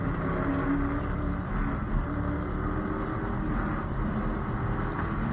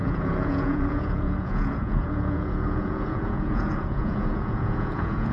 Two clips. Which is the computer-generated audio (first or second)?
second